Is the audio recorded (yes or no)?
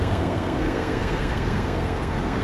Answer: no